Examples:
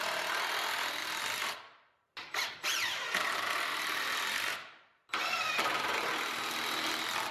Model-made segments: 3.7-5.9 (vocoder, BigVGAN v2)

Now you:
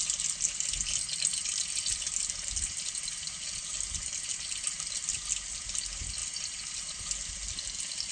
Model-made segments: none

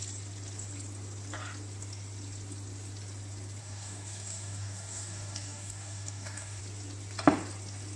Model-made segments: 3.6-6.6 (codec, DAC)

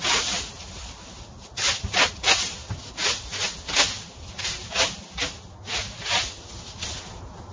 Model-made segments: none